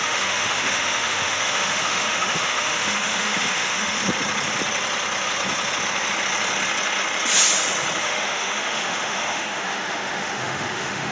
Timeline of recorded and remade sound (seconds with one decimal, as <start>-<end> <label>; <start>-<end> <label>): 0.0-4.0 remade; 4.0-8.0 recorded; 8.0-11.1 remade